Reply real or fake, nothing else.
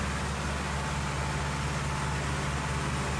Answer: real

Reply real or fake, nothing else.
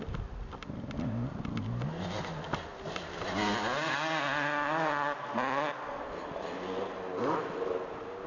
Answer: real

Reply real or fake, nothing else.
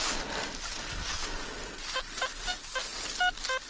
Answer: real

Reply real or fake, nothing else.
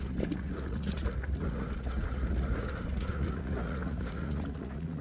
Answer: fake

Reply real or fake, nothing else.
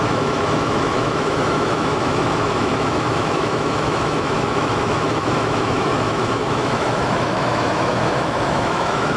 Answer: fake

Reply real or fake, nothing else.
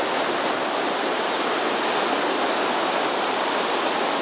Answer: real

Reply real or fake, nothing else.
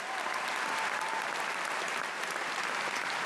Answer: real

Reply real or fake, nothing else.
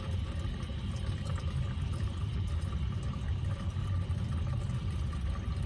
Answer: fake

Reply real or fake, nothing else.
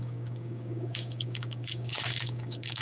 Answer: fake